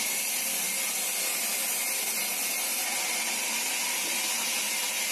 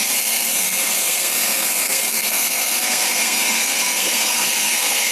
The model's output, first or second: second